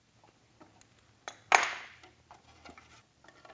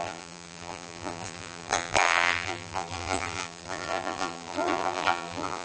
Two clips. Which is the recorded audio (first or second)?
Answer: first